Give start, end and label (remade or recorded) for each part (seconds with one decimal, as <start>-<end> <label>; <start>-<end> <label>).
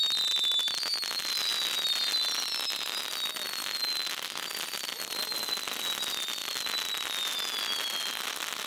0.0-8.7 recorded